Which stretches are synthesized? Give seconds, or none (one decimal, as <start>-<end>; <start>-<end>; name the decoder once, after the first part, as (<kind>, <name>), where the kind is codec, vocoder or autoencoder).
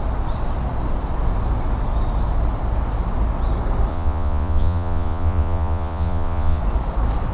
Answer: 3.9-6.6 (vocoder, Vocos)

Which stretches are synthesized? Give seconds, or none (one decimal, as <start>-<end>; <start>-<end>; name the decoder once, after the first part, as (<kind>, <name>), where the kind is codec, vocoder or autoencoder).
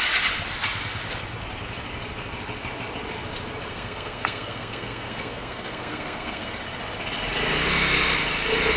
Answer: 3.7-6.5 (codec, SNAC)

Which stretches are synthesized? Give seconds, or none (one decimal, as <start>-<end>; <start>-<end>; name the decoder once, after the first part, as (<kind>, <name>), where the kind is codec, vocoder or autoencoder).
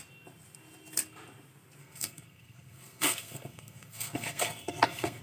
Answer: 1.8-5.2 (codec, SNAC)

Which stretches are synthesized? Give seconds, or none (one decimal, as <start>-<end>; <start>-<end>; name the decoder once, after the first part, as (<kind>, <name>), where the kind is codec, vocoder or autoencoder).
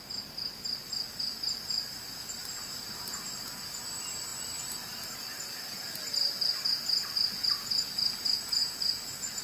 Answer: 2.4-3.2 (vocoder, BigVGAN v2); 8.6-9.4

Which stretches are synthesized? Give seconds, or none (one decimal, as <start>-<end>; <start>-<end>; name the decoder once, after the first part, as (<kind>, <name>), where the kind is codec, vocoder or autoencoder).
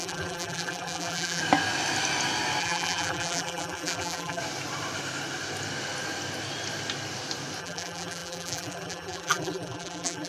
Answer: 0.0-1.4 (vocoder, BigVGAN v2); 2.6-4.4; 7.6-10.3